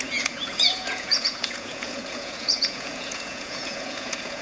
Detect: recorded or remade remade